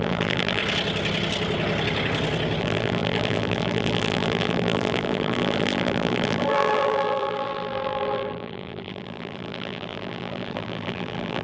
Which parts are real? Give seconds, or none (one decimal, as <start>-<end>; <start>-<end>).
0.6-2.6